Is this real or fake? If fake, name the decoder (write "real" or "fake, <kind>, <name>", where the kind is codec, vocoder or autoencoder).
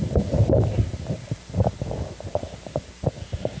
fake, vocoder, BigVGAN v2